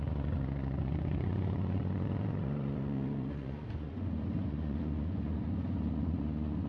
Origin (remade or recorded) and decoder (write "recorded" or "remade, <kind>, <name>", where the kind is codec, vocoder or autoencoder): remade, vocoder, Vocos